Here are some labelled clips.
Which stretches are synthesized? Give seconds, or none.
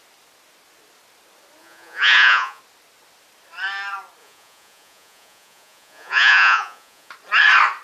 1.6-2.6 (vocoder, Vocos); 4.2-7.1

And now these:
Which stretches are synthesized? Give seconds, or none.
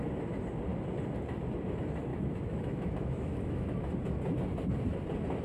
2.1-3.9 (autoencoder, DAC-VAE)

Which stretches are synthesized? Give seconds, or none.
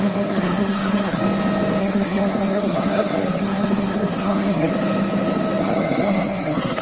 0.0-1.2 (codec, SNAC); 1.8-4.7; 5.6-6.8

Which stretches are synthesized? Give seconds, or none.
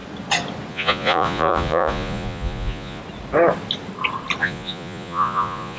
0.7-3.0 (vocoder, Vocos); 4.4-5.8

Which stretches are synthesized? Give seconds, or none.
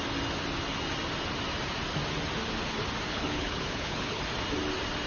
3.1-4.2 (codec, HILCodec)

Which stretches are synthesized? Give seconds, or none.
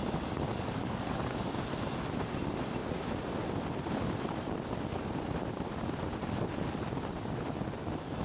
0.5-1.1 (codec, DAC)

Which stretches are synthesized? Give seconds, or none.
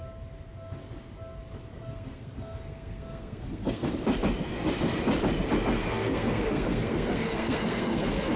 1.7-3.9 (codec, SNAC); 5.8-8.4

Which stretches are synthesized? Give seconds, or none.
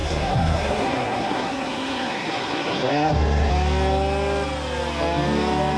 0.0-3.5 (codec, SNAC)